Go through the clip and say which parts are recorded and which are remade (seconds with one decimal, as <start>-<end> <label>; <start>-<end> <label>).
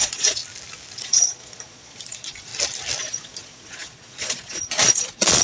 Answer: 0.0-0.4 remade; 0.4-1.0 recorded; 1.0-2.5 remade; 2.5-3.0 recorded; 3.0-5.4 remade